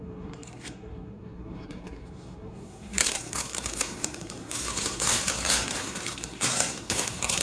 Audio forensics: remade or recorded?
remade